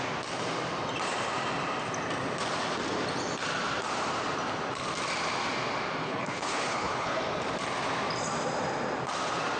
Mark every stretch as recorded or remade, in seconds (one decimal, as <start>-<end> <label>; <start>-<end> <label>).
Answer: 0.0-6.0 recorded; 6.0-7.2 remade; 7.2-9.6 recorded